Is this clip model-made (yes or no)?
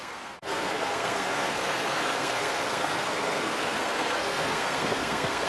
yes